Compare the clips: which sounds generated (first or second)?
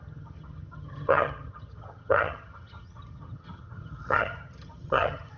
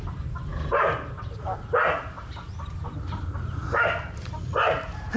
first